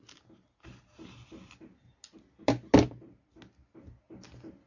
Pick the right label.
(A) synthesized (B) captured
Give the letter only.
B